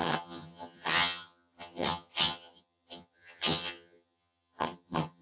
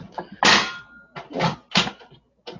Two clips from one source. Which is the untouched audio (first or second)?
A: second